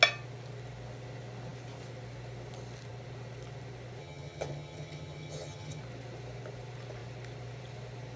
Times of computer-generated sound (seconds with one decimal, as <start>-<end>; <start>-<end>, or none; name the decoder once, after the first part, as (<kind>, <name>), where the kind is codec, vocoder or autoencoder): 4.0-5.8 (vocoder, HiFi-GAN)